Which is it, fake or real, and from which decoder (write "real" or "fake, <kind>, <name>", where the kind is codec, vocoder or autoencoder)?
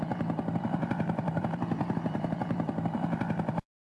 fake, vocoder, BigVGAN v2